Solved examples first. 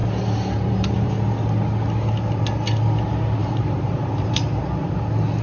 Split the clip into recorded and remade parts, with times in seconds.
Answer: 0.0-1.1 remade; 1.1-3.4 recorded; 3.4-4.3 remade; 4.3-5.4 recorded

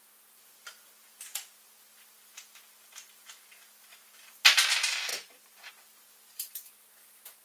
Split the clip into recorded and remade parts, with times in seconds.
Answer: 0.0-5.1 recorded; 5.1-5.7 remade; 5.7-7.4 recorded

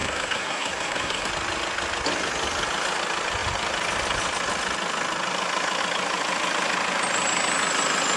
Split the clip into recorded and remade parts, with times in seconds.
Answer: 0.0-1.3 remade; 1.3-8.2 recorded